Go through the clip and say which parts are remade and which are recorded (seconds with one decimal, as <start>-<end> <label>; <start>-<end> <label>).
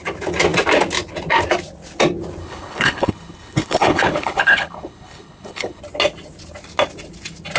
0.0-2.4 recorded; 2.4-5.8 remade; 5.8-7.6 recorded